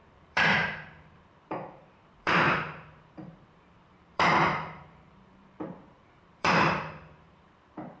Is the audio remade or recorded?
remade